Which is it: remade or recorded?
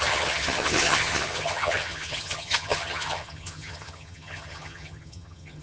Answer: remade